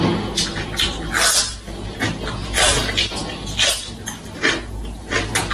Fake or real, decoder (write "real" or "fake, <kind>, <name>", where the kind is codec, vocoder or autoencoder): real